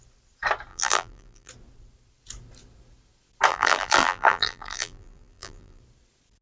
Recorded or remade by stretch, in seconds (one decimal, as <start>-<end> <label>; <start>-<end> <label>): 0.0-0.7 recorded; 0.7-1.5 remade; 1.5-3.5 recorded; 3.5-5.8 remade; 5.8-6.4 recorded